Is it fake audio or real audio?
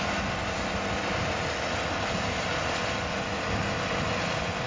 real